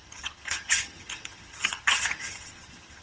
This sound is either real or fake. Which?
fake